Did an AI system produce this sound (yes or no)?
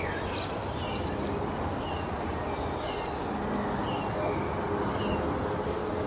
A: no